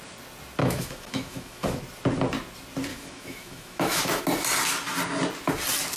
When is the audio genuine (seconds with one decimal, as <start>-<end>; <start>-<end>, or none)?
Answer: 0.0-0.6; 1.8-2.9; 4.2-6.0